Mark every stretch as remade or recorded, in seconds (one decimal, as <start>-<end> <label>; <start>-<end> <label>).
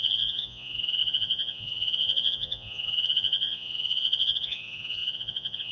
0.0-5.7 remade